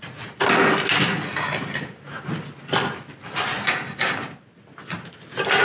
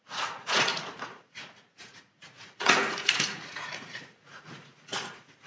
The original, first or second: first